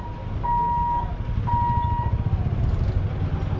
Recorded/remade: recorded